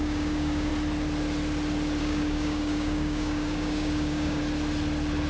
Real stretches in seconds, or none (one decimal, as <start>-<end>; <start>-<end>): 0.7-2.0; 4.4-5.3